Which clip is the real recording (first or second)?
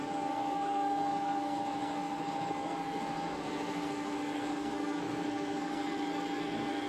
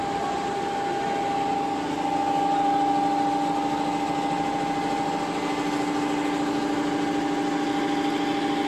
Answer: second